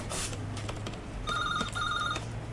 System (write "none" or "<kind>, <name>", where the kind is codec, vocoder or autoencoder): vocoder, BigVGAN v2